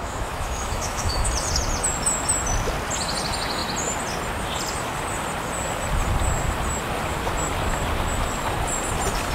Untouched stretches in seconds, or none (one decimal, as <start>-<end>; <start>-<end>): 1.3-9.3